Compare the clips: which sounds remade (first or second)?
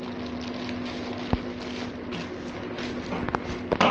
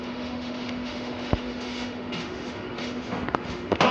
second